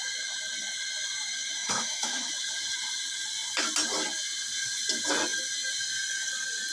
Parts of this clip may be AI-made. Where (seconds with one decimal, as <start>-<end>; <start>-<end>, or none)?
1.6-2.3